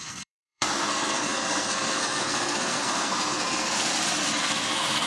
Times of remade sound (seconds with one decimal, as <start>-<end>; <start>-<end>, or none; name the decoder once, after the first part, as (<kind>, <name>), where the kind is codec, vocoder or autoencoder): 0.0-3.9 (codec, SNAC); 4.4-5.1